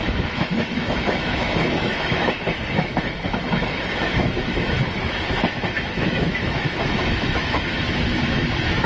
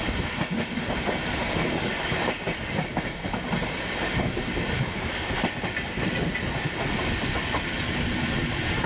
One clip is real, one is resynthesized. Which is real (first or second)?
second